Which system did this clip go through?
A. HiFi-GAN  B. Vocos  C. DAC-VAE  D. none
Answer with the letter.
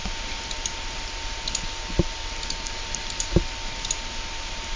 D